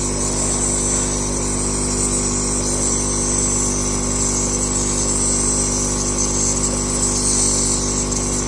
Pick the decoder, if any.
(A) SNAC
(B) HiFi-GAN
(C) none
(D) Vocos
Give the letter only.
C